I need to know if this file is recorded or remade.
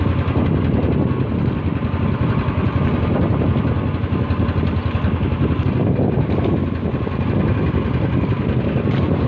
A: recorded